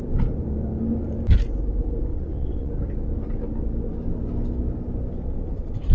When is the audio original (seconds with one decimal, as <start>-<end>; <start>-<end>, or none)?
0.0-2.1; 2.7-5.9